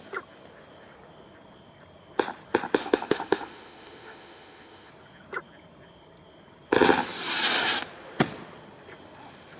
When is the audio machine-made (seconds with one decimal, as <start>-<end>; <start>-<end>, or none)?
2.8-4.9